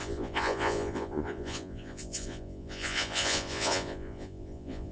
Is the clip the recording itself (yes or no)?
no